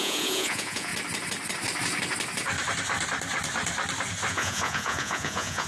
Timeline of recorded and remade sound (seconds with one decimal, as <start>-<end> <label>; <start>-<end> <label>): 0.0-0.9 remade; 0.9-4.3 recorded; 4.3-5.7 remade